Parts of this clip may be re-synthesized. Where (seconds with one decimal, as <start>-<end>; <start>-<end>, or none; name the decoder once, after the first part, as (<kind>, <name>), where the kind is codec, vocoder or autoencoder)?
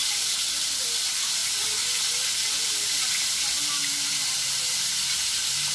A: none